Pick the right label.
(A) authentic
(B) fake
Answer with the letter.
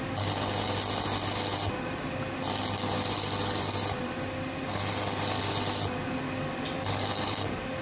A